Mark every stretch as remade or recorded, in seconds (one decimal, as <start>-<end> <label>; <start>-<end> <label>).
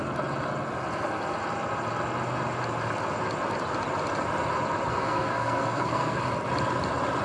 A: 0.0-4.9 recorded; 4.9-6.2 remade; 6.2-7.2 recorded